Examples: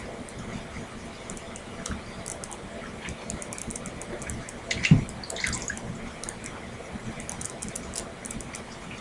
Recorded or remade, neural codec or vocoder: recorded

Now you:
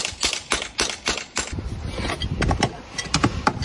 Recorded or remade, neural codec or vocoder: recorded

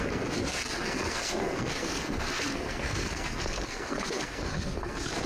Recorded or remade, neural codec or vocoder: remade, codec, SNAC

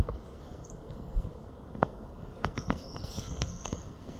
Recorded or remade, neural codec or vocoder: remade, codec, SNAC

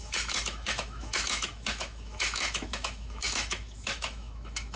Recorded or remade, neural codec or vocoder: remade, autoencoder, DAC-VAE